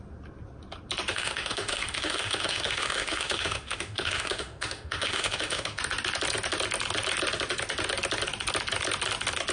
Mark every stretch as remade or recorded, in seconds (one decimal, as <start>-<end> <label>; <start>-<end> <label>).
0.0-1.1 recorded; 1.1-5.8 remade; 5.8-9.5 recorded